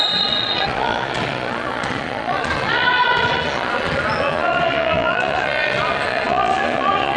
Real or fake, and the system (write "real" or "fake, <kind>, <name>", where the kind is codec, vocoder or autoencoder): fake, vocoder, Vocos